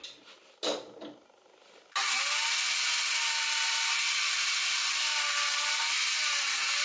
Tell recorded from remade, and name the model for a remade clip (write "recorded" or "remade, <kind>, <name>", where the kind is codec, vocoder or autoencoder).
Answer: recorded